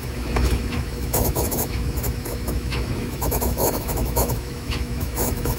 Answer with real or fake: fake